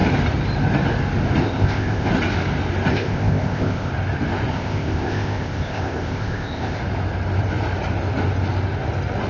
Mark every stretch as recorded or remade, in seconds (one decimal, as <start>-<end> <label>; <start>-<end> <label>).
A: 0.0-1.4 recorded; 1.4-2.1 remade; 2.1-2.9 recorded; 2.9-3.9 remade; 3.9-4.5 recorded; 4.5-6.8 remade; 6.8-9.3 recorded